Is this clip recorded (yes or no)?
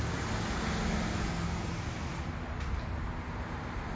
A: yes